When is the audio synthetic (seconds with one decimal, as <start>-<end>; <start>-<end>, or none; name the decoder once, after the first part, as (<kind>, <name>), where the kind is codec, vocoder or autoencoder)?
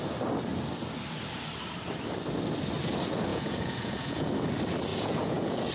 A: 3.3-4.3 (vocoder, Vocos); 4.9-5.7